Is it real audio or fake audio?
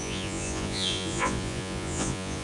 fake